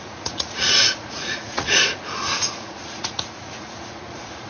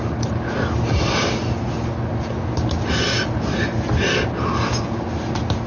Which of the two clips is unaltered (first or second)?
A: second